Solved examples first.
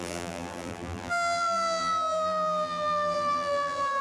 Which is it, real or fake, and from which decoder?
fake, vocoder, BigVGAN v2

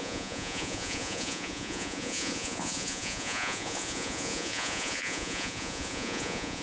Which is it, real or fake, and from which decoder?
fake, vocoder, Vocos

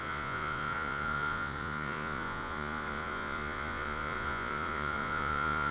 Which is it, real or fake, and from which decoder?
fake, vocoder, Vocos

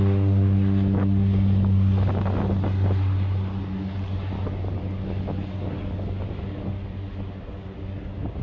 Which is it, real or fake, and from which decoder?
real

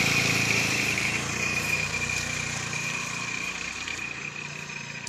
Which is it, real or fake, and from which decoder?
fake, vocoder, BigVGAN v2